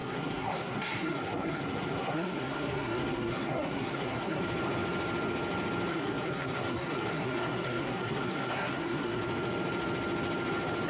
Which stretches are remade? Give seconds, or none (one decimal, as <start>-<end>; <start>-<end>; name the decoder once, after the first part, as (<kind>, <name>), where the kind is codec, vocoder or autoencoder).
0.0-4.4 (codec, SNAC); 5.9-9.2